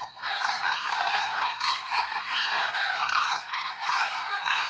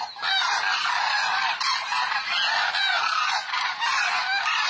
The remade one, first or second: first